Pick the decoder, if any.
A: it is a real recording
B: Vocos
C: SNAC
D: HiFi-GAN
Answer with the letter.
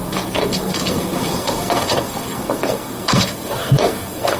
C